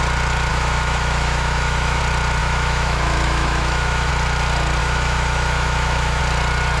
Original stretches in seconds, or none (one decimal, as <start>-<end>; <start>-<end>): 0.0-0.5; 2.0-2.4; 4.1-4.8; 6.2-6.8